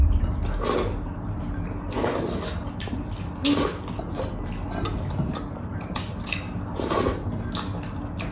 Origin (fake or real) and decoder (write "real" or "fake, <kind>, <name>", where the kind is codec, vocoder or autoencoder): real